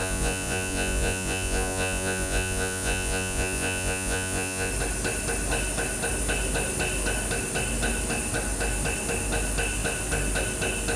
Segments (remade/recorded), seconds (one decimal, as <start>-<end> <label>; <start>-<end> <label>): 0.0-4.7 remade; 4.7-11.0 recorded

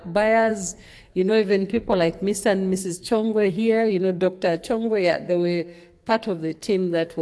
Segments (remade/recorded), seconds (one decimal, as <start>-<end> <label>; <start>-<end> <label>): 0.0-2.1 remade; 2.1-2.8 recorded; 2.8-7.2 remade

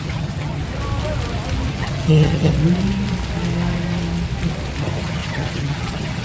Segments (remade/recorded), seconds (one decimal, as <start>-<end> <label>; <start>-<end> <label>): 0.0-0.6 remade; 0.6-1.7 recorded; 1.7-2.5 remade; 2.5-4.8 recorded; 4.8-6.2 remade

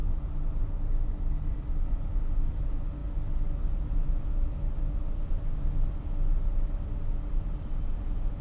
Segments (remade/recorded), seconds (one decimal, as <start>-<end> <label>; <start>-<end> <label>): 0.0-8.4 recorded

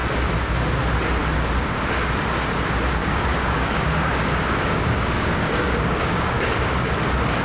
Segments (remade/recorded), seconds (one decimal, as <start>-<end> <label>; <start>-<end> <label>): 0.0-3.0 recorded; 3.0-6.9 remade; 6.9-7.4 recorded

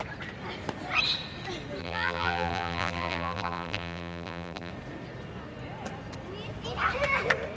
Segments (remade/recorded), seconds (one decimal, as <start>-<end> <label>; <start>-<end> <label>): 0.0-1.8 recorded; 1.8-4.7 remade; 4.7-7.6 recorded

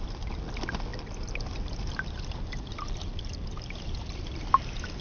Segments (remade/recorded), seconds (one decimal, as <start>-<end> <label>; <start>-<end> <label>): 0.0-5.0 recorded